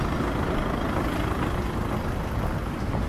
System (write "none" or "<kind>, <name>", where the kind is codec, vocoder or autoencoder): none